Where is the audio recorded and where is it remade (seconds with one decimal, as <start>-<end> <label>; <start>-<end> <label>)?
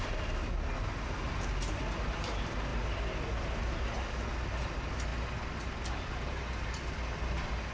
0.0-7.7 recorded